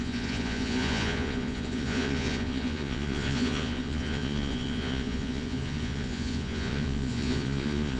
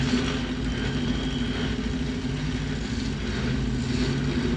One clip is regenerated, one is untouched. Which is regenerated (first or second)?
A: first